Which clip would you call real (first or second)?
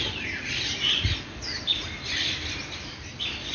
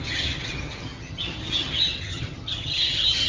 first